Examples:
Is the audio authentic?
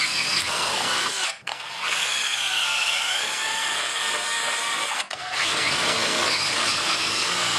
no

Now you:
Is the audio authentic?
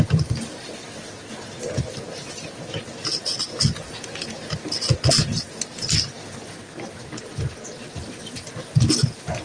yes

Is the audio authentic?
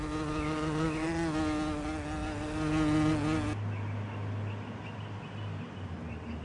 yes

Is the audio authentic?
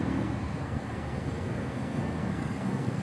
no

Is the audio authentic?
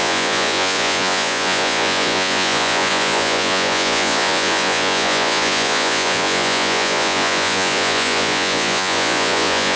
no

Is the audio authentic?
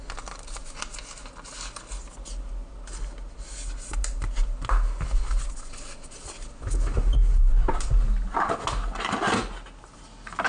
yes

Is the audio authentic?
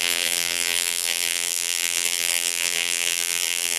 no